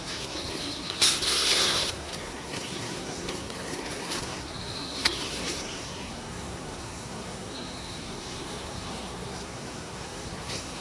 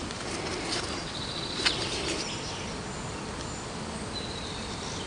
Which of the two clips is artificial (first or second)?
first